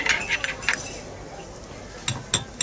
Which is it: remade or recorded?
recorded